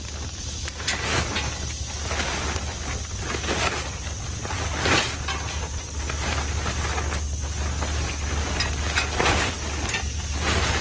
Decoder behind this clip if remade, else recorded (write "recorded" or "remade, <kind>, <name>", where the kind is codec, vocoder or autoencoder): recorded